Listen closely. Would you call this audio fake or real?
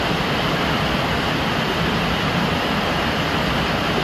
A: real